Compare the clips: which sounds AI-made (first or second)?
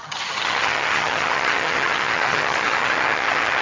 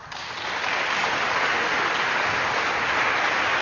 first